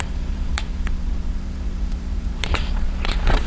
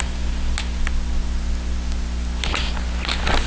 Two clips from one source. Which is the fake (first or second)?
first